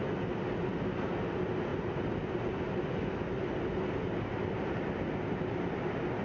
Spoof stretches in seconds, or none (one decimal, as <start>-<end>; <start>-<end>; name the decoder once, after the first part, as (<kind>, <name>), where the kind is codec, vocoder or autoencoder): none